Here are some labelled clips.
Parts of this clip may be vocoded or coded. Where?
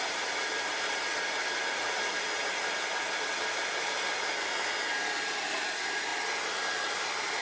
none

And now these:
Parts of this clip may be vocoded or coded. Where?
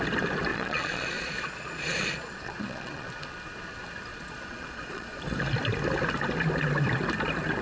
0.5-3.1; 4.1-5.2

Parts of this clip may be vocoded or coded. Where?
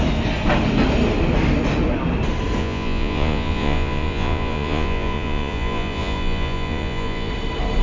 2.6-7.3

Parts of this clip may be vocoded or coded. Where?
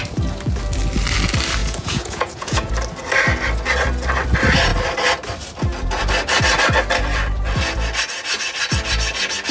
1.6-2.7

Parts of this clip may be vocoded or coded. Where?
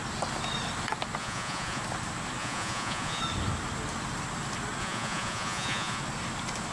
1.2-1.8; 2.4-3.2; 4.8-6.0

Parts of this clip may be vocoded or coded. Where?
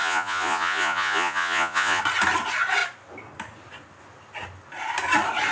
0.0-2.0